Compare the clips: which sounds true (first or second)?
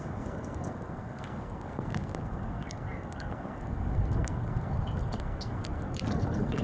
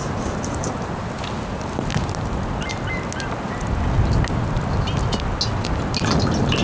second